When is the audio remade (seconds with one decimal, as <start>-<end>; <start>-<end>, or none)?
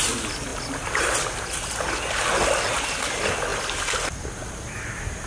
none